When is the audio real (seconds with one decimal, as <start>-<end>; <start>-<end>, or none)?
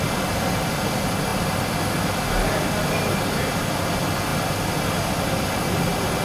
0.0-6.2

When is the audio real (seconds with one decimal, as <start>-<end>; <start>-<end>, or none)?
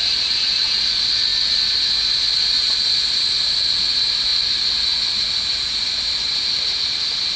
0.0-7.4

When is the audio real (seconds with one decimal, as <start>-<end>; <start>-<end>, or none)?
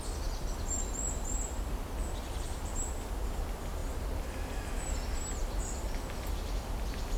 0.0-7.2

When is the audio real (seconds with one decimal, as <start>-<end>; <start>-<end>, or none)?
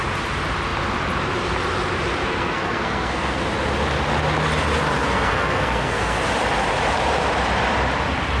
0.0-2.2; 3.4-5.0; 6.2-8.4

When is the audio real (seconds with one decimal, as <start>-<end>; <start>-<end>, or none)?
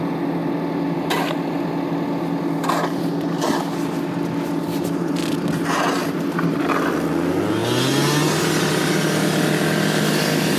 0.0-10.6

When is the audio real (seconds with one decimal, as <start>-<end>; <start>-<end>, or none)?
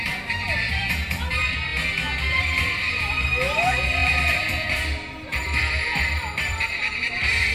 1.7-2.4